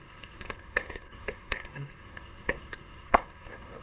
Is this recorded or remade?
remade